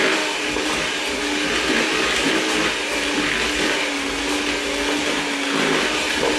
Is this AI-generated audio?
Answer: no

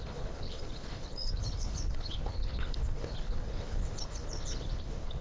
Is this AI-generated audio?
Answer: yes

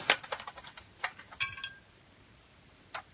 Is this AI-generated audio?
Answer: no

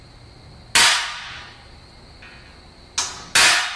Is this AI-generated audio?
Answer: no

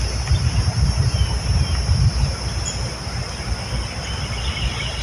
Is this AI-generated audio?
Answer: no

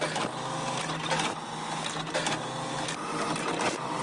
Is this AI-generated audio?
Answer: no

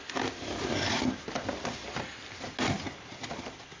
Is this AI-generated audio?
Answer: no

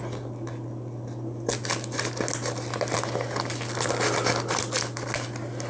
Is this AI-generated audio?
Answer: no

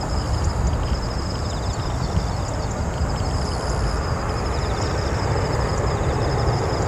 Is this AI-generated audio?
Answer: no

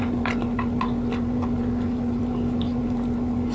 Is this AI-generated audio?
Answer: no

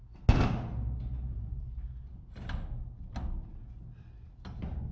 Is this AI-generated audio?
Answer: no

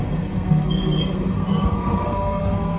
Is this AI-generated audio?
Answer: yes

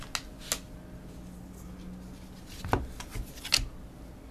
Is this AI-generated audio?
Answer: no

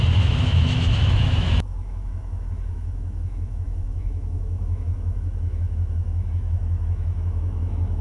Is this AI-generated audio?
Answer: yes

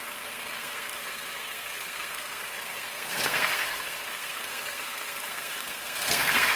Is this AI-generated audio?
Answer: yes